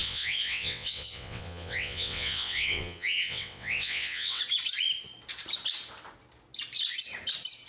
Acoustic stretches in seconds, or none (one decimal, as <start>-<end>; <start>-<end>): 4.4-7.7